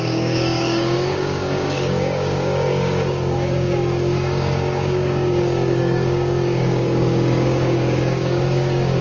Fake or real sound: fake